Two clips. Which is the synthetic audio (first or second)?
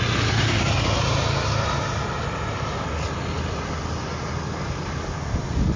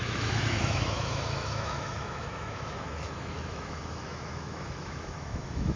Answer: second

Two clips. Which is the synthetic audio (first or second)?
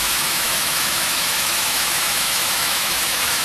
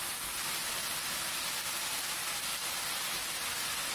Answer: first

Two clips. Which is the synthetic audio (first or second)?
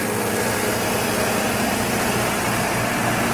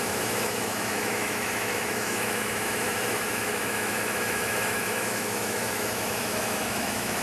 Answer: second